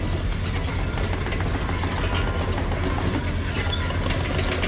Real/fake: real